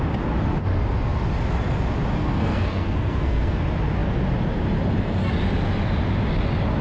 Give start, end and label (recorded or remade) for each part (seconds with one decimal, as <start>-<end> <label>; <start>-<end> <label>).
0.0-2.2 recorded; 2.2-3.6 remade; 3.6-6.8 recorded